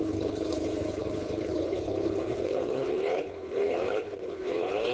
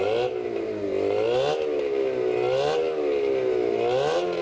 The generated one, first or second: first